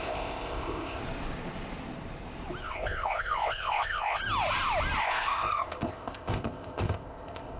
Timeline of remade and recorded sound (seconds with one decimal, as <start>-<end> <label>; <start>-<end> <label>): 0.0-1.0 remade; 1.0-2.6 recorded; 2.6-4.2 remade; 4.2-5.0 recorded; 5.0-7.6 remade